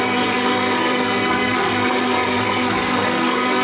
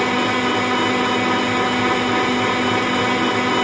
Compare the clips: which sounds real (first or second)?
second